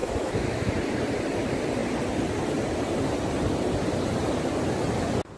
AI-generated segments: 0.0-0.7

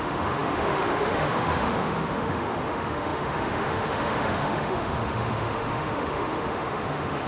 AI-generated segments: 0.0-7.3